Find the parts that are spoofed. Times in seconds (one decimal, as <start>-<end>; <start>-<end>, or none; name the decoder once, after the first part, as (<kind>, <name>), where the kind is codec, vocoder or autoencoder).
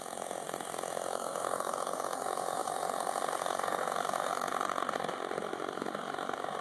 0.0-6.6 (autoencoder, DAC-VAE)